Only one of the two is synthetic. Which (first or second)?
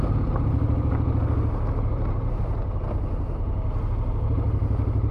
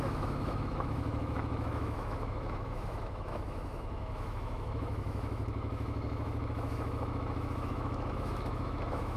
second